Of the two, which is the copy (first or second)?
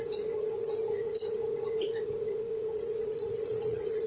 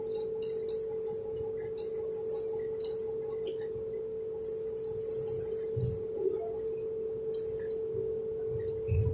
first